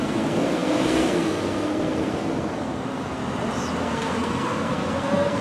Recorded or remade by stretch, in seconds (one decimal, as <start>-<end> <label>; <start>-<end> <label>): 0.0-3.2 remade; 3.2-3.8 recorded; 3.8-5.4 remade